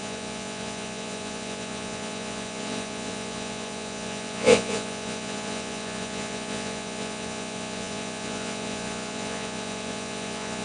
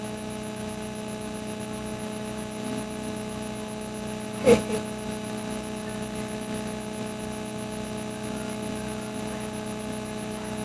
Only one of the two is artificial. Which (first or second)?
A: first